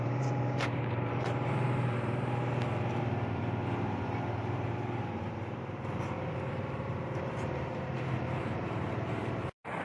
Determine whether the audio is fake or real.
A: fake